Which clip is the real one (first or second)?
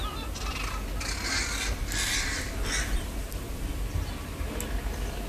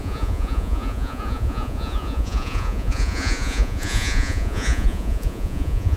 first